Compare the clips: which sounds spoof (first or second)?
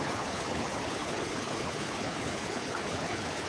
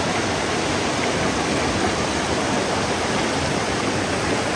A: first